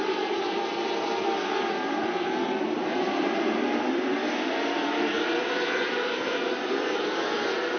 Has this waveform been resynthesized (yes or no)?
yes